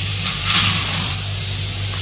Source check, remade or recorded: remade